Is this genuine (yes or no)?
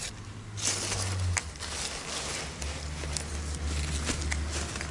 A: yes